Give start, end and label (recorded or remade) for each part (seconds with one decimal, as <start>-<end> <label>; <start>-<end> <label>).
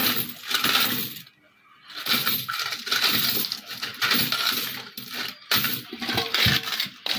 0.0-7.2 recorded